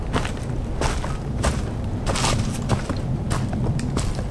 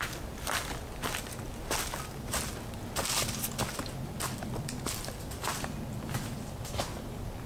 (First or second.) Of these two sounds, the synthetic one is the first